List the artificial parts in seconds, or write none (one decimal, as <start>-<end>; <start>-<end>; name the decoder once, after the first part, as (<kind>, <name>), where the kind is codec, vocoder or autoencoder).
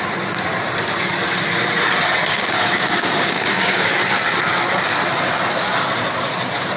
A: 2.3-3.9 (codec, DAC)